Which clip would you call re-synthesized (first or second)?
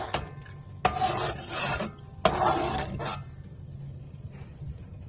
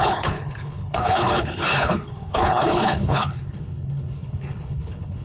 second